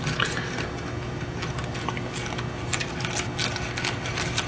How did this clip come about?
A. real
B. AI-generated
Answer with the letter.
A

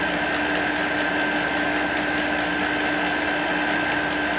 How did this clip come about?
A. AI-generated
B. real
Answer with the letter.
B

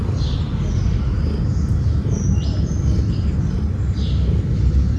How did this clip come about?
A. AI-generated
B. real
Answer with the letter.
B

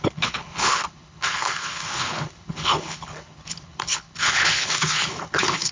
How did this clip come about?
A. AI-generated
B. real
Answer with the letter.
A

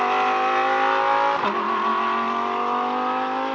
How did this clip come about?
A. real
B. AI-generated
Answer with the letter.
A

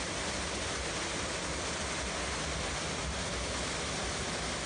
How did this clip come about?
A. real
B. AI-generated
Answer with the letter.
A